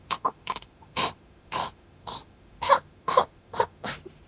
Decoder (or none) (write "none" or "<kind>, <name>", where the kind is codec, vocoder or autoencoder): autoencoder, DAC-VAE